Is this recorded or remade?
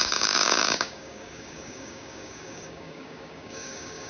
remade